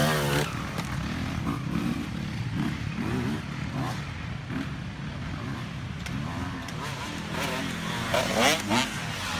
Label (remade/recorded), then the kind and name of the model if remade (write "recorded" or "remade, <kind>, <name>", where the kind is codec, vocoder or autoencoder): recorded